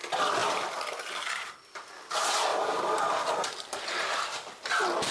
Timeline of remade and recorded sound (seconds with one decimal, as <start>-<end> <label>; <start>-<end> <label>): 0.0-2.5 recorded; 2.5-3.8 remade; 3.8-5.1 recorded